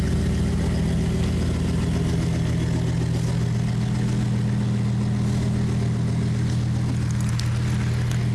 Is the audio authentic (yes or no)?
yes